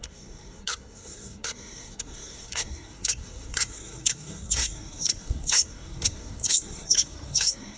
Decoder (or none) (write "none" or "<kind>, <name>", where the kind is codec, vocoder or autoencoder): codec, SNAC